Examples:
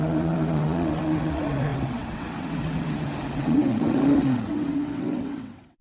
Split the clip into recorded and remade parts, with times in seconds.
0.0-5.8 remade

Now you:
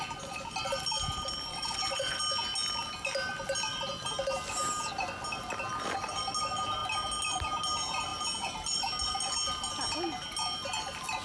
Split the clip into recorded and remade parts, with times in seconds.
0.0-1.5 recorded; 1.5-2.2 remade; 2.2-11.2 recorded